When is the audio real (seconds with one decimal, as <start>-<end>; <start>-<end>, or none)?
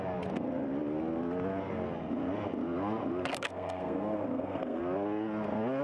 0.0-3.3; 4.8-5.8